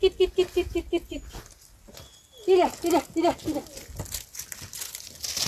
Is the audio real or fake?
real